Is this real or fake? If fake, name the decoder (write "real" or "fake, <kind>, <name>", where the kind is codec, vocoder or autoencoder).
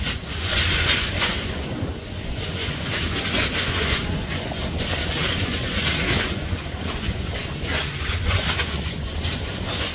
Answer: fake, vocoder, Vocos